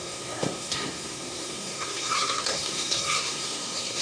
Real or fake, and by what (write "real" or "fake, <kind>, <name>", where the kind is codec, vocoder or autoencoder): fake, codec, SNAC